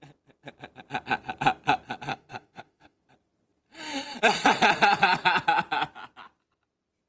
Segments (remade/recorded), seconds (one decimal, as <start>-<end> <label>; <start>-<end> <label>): 0.0-2.1 recorded; 2.1-3.0 remade; 3.0-7.1 recorded